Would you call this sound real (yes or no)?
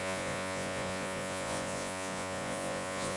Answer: no